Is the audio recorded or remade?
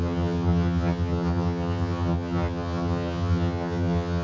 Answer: remade